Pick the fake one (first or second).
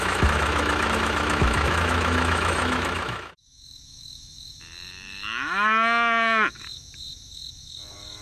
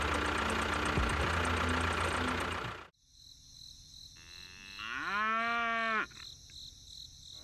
first